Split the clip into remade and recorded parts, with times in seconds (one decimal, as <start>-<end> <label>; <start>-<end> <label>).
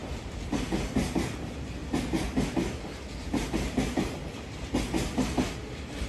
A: 0.0-6.1 recorded